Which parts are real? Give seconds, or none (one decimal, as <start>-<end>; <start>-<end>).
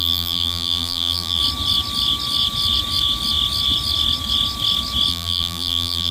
1.4-5.1